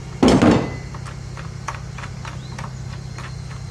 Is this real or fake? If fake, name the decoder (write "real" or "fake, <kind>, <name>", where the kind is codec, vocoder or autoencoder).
real